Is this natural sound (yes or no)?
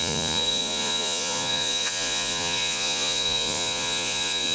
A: no